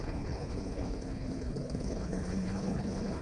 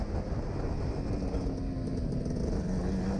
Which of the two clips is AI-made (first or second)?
first